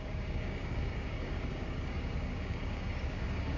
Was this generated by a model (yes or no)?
yes